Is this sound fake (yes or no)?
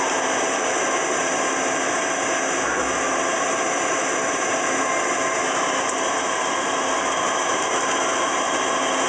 no